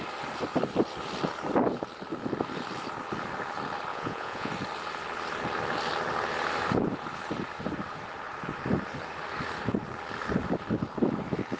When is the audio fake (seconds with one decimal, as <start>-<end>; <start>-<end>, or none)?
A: 3.9-4.5